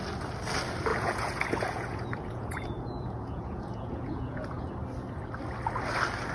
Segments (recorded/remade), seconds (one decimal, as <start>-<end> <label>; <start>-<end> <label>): 0.0-0.9 recorded; 0.9-4.7 remade; 4.7-6.3 recorded